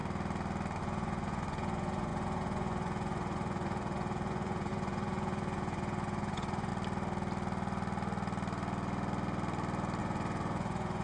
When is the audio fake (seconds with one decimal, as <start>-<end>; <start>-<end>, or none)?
0.8-6.7; 10.0-11.0